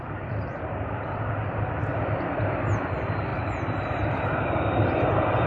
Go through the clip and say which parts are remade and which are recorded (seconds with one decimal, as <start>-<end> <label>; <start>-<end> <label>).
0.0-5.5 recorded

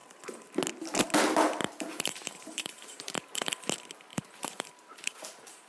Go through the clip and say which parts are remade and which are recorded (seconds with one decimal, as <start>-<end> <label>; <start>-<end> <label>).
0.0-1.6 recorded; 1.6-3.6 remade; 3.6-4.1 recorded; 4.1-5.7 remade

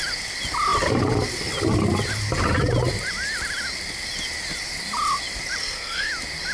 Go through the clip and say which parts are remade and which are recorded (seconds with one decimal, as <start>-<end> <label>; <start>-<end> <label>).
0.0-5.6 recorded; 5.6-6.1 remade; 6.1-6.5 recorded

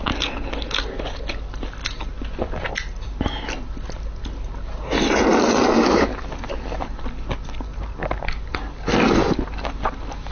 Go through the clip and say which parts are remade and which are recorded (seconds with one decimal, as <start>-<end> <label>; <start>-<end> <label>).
0.0-10.3 recorded